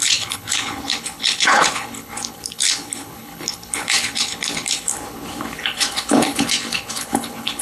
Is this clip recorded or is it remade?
remade